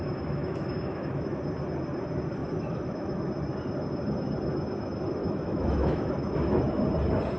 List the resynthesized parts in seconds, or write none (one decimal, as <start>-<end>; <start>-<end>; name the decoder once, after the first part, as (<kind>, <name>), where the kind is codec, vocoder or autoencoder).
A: 0.4-1.4 (autoencoder, DAC-VAE); 2.4-3.2; 5.2-6.8